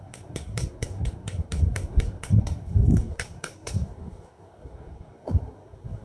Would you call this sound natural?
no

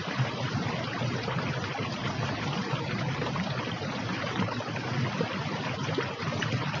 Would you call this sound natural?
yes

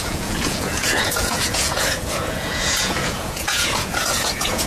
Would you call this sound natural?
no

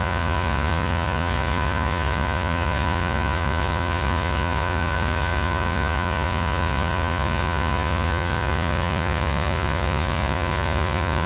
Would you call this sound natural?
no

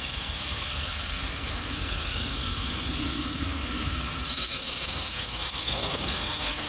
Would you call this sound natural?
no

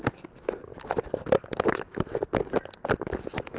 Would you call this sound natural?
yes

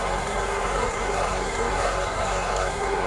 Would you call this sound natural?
no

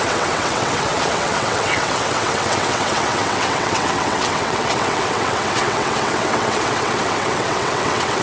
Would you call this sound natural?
no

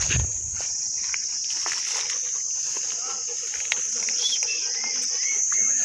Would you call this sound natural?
yes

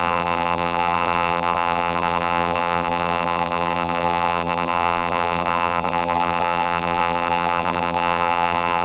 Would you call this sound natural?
no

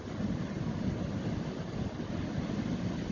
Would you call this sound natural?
yes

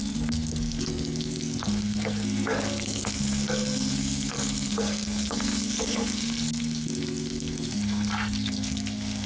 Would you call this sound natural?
no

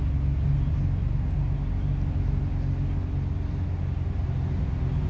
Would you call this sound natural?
yes